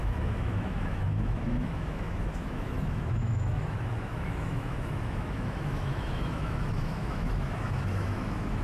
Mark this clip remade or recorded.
remade